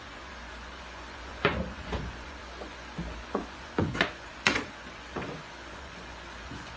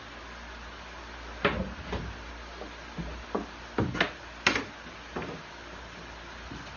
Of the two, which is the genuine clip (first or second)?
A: second